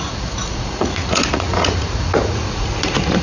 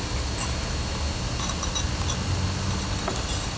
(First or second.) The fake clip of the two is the first